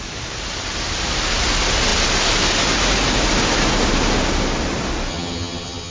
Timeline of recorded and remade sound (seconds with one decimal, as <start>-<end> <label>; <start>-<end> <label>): 0.0-5.1 recorded; 5.1-5.9 remade